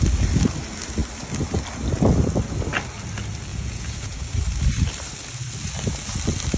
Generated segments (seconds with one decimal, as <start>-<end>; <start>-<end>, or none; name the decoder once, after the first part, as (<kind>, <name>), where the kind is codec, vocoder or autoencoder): 3.5-4.2 (vocoder, Vocos)